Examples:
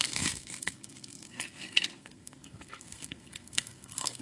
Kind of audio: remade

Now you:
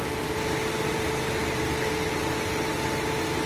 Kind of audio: recorded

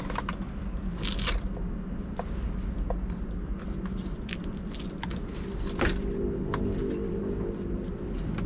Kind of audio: recorded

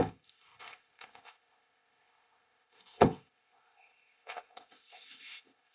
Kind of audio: remade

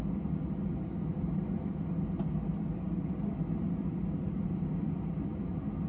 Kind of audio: recorded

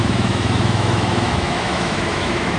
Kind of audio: remade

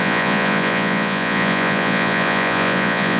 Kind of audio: remade